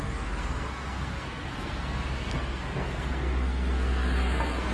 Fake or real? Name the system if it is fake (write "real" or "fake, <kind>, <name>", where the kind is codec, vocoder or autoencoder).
fake, codec, SNAC